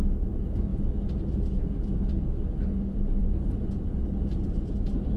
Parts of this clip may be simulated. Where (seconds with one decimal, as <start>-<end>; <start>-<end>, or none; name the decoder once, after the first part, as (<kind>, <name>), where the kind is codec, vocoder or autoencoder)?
3.2-4.7 (vocoder, BigVGAN v2)